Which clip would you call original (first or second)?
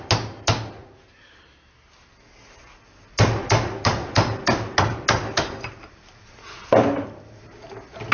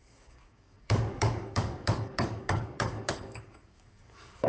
first